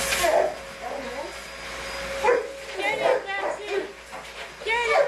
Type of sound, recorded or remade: recorded